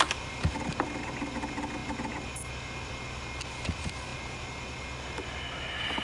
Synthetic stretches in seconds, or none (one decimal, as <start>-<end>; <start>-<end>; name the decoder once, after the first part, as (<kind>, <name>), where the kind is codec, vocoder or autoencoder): none